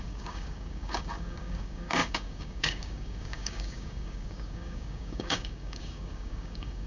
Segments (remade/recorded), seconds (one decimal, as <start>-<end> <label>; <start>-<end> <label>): 0.0-6.9 remade